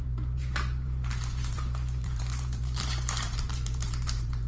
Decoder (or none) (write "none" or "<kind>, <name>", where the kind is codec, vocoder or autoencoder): vocoder, BigVGAN v2